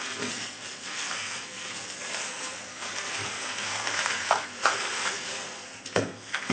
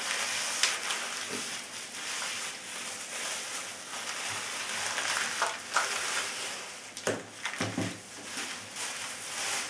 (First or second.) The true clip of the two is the second